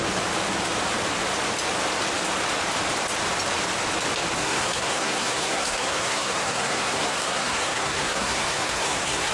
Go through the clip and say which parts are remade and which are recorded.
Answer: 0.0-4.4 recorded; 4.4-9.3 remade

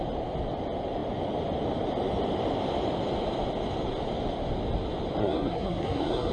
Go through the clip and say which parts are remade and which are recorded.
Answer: 0.0-5.2 recorded; 5.2-6.3 remade